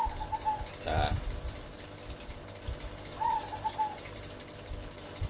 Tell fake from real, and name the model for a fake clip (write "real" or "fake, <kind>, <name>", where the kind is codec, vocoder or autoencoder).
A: real